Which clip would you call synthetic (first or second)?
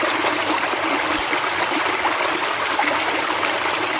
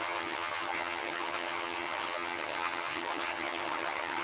second